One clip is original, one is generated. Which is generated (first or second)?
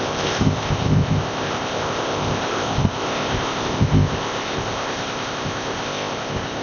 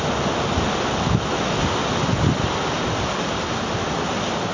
first